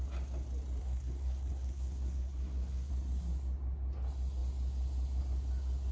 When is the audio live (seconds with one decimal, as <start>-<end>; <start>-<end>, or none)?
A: 0.0-0.8; 2.9-5.9